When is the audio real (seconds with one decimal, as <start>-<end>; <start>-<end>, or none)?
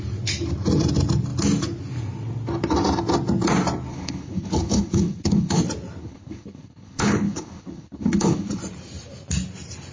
0.0-3.9; 5.6-6.0; 8.6-9.9